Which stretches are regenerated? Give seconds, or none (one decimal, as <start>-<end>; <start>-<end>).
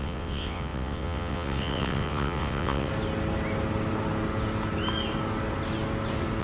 0.0-2.9